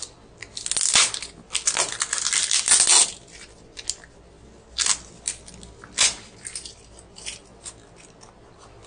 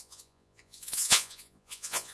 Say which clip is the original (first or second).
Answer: first